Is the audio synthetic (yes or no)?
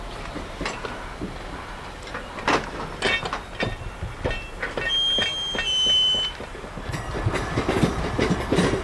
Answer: no